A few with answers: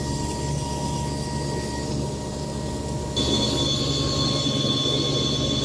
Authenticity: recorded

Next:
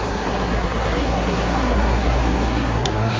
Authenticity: remade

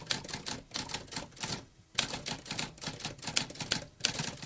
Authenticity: recorded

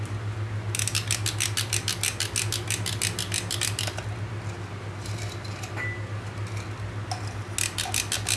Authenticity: recorded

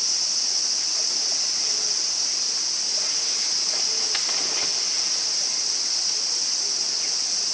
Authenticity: recorded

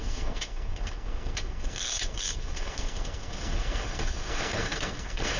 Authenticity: remade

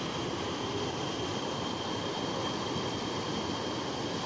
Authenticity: recorded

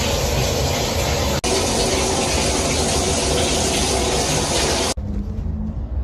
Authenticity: recorded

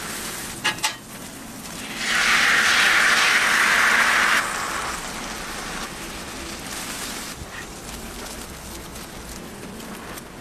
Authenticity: recorded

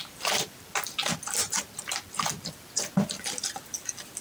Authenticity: recorded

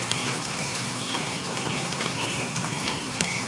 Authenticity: remade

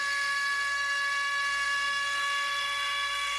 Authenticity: remade